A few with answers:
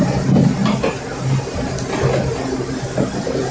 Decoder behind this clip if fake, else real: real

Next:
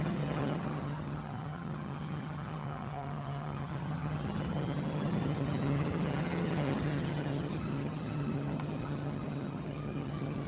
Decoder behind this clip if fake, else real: fake, vocoder, HiFi-GAN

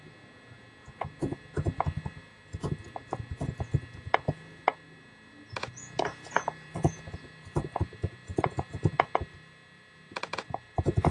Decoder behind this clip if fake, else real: fake, vocoder, Vocos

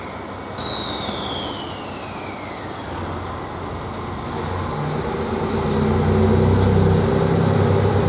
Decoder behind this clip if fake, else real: real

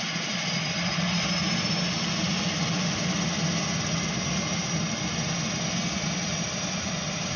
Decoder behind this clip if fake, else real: real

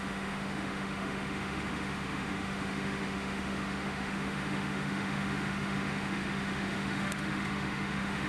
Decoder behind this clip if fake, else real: fake, autoencoder, DAC-VAE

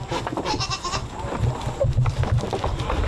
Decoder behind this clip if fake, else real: real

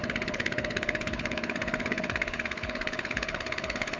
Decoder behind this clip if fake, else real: fake, codec, HILCodec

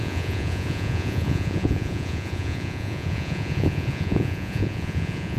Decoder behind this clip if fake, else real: fake, vocoder, Vocos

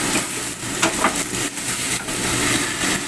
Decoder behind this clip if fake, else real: real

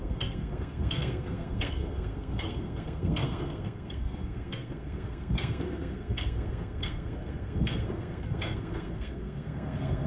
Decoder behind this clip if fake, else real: fake, codec, SNAC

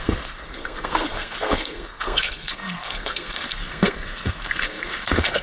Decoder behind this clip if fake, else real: fake, codec, SNAC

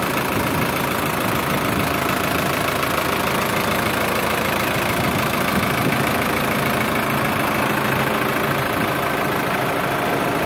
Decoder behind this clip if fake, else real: real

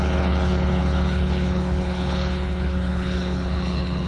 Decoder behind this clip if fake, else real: fake, codec, HILCodec